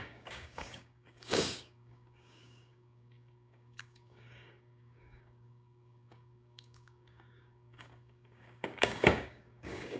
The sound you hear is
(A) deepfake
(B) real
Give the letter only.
A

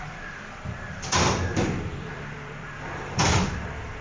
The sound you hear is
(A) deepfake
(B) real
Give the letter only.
A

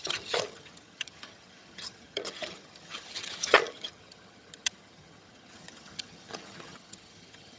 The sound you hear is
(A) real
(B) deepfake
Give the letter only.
B